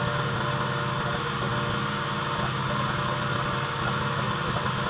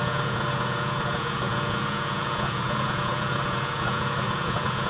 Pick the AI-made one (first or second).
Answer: second